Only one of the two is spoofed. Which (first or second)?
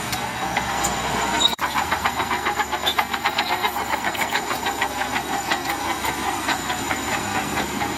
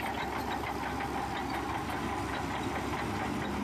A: first